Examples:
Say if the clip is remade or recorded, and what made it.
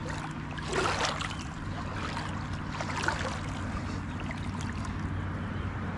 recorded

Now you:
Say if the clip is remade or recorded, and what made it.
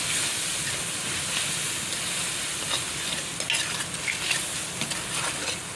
recorded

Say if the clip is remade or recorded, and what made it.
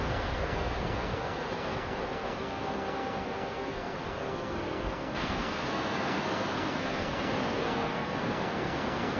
remade, codec, SNAC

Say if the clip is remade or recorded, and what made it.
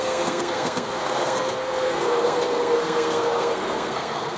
remade, codec, SNAC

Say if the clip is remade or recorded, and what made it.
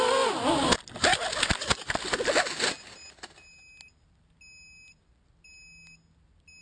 recorded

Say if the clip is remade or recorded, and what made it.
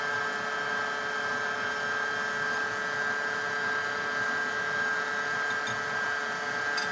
recorded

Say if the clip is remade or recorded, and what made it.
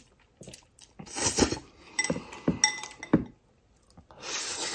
recorded